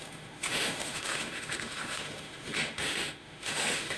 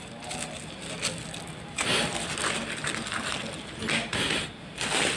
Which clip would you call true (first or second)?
second